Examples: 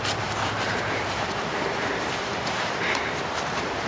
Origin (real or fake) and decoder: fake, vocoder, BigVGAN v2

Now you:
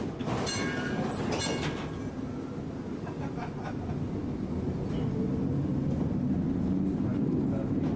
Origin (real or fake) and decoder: real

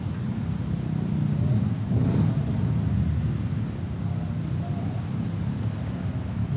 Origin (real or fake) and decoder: real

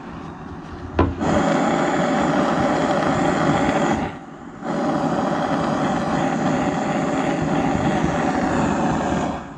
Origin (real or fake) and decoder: real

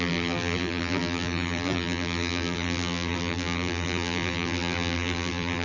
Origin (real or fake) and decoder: fake, vocoder, BigVGAN v2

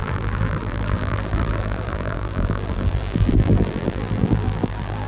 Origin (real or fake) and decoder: fake, vocoder, BigVGAN v2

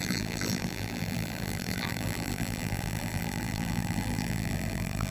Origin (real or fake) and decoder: fake, vocoder, BigVGAN v2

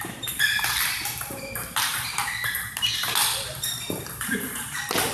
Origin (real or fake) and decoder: fake, vocoder, BigVGAN v2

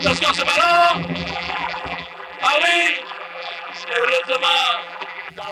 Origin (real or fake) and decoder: fake, vocoder, BigVGAN v2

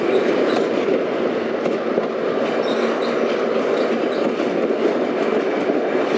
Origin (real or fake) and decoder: real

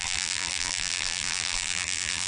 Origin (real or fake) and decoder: fake, vocoder, BigVGAN v2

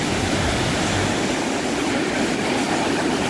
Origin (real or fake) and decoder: fake, vocoder, BigVGAN v2